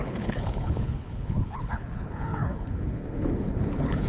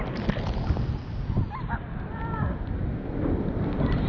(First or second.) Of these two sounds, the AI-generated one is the first